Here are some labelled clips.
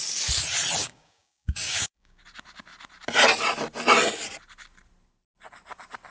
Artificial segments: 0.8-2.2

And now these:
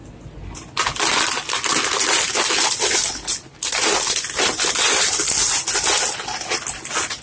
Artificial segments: none

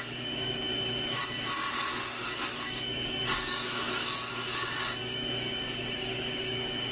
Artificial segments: 0.0-1.2; 1.7-6.9

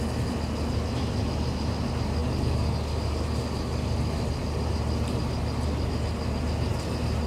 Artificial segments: none

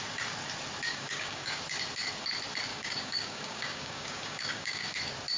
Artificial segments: 0.9-1.6; 2.7-5.0